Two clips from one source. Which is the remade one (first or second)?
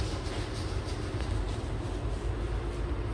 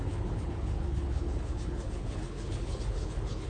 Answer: second